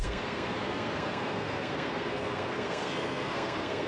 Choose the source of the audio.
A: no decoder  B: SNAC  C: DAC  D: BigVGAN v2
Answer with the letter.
B